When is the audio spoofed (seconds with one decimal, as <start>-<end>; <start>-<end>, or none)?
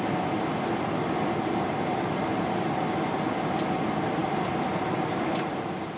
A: none